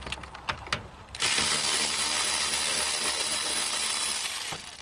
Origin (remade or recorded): recorded